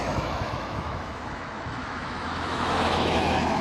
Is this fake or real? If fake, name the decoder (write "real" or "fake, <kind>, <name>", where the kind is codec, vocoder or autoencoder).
fake, autoencoder, DAC-VAE